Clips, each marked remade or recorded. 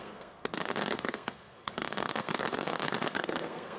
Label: remade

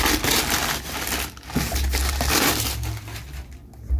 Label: recorded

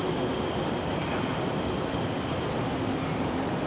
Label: recorded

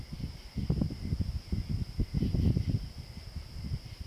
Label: recorded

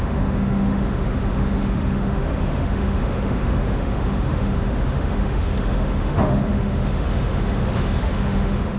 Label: remade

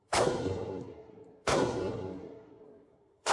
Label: remade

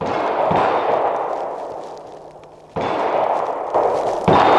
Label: recorded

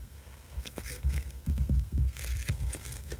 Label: remade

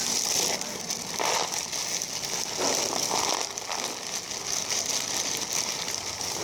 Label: recorded